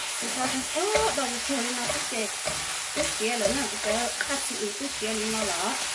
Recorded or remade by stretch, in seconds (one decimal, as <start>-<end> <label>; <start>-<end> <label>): 0.0-0.8 remade; 0.8-5.9 recorded